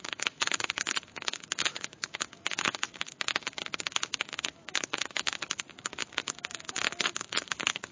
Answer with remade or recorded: remade